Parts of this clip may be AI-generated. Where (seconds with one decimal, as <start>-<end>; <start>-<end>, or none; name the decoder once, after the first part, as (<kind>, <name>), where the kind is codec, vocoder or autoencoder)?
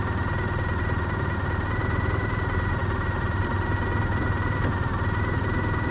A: none